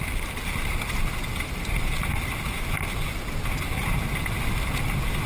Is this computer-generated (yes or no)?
no